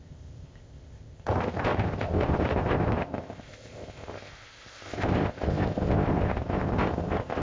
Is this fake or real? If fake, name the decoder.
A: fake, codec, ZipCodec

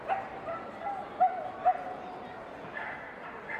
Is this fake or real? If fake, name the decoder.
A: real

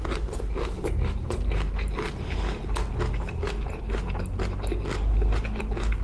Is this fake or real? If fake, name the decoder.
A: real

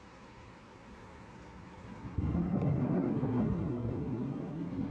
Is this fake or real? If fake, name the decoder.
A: fake, codec, SNAC